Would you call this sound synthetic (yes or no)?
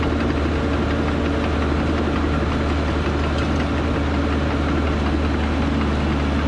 no